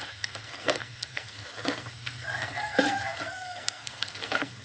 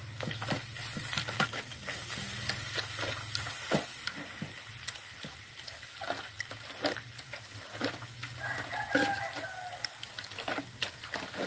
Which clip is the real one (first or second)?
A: second